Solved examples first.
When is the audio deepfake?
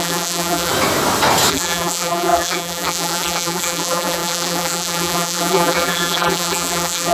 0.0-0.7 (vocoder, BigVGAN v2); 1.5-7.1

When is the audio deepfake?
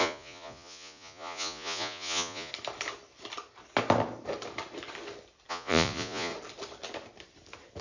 0.0-2.5 (vocoder, Vocos); 5.5-6.3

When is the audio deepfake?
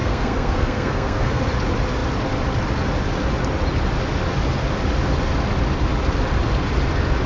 0.0-1.4 (codec, SNAC)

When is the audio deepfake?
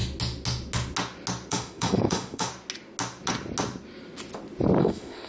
1.5-2.5 (autoencoder, DAC-VAE); 4.8-5.3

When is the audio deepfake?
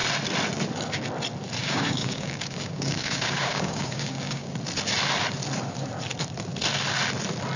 1.6-4.5 (codec, DAC)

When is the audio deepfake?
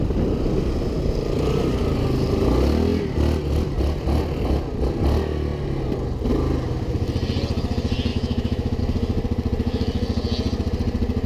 8.1-8.8 (autoencoder, DAC-VAE)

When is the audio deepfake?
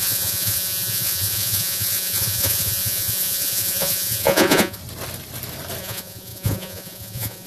0.0-4.8 (vocoder, Vocos); 5.8-7.5